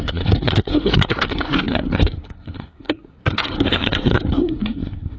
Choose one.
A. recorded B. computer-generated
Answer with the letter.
B